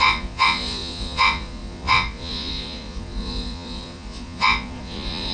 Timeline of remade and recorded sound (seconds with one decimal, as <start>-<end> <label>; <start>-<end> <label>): 0.0-5.3 remade